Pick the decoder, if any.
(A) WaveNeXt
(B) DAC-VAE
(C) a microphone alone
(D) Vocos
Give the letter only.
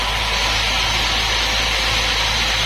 C